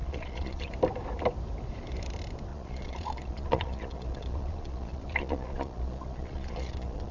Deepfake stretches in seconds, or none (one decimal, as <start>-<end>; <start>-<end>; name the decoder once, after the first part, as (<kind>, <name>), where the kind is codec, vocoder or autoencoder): 0.0-0.7 (vocoder, Vocos); 2.5-7.1

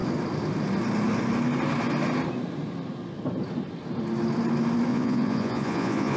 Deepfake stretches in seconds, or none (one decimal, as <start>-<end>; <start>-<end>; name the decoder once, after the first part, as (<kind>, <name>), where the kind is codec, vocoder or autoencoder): 4.9-6.2 (vocoder, Vocos)

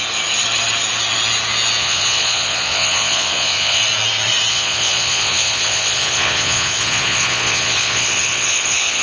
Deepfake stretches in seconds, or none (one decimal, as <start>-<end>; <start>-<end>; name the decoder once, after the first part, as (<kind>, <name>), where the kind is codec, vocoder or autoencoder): 1.8-3.8 (vocoder, Vocos); 4.5-9.0